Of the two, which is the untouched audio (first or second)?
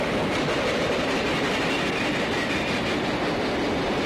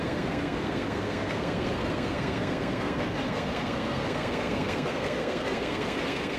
first